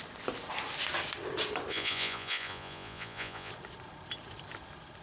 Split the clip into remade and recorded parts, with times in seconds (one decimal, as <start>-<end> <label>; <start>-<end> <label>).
0.0-1.7 recorded; 1.7-3.5 remade; 3.5-5.0 recorded